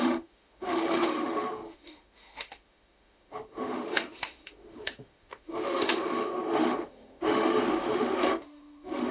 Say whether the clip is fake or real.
fake